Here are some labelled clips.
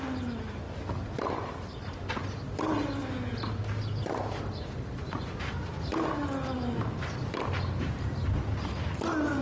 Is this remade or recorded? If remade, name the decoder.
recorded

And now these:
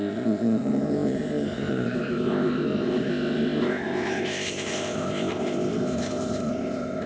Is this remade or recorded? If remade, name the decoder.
remade, codec, ZipCodec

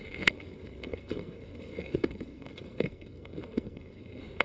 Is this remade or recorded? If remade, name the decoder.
remade, codec, SNAC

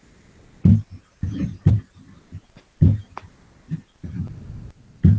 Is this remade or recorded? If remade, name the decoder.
recorded